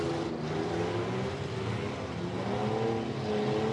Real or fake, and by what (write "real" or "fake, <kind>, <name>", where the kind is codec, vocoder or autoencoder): real